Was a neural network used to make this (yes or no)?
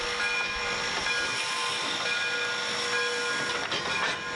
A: no